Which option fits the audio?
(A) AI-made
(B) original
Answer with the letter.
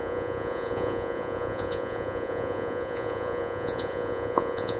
A